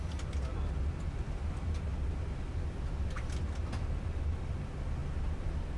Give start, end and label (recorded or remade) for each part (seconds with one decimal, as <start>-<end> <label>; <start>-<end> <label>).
0.0-5.8 recorded